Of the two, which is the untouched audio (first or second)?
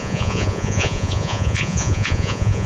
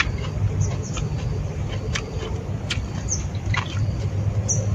second